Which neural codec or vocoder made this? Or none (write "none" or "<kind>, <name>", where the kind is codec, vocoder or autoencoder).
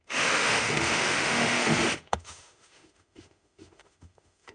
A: autoencoder, DAC-VAE